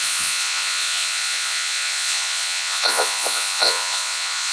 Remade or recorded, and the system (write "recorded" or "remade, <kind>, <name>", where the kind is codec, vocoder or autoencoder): remade, vocoder, Vocos